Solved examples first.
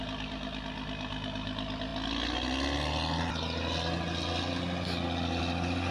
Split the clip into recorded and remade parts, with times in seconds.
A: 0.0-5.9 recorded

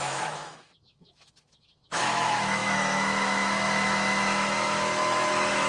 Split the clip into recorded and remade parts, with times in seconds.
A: 0.0-5.7 remade

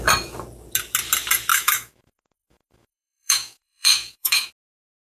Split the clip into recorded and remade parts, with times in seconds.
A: 0.0-1.5 recorded; 1.5-4.5 remade; 4.5-5.0 recorded